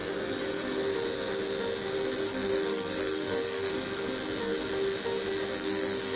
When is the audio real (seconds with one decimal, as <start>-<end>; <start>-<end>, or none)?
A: 0.0-2.3; 3.7-5.5